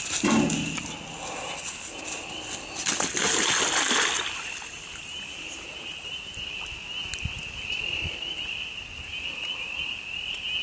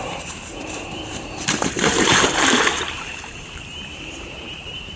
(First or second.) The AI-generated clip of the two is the second